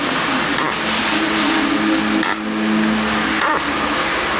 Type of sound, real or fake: real